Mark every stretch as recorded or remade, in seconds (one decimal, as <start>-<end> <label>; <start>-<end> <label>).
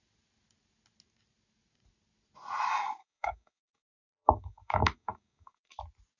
0.0-3.0 recorded; 3.0-5.8 remade; 5.8-6.2 recorded